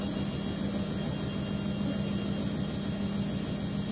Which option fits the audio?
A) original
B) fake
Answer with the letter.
A